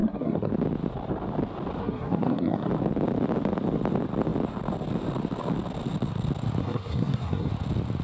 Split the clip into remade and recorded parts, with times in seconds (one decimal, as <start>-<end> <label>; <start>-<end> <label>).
0.0-0.5 remade; 0.5-1.8 recorded; 1.8-2.7 remade; 2.7-6.6 recorded; 6.6-7.5 remade; 7.5-8.0 recorded